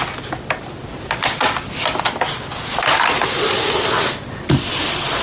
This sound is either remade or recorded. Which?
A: recorded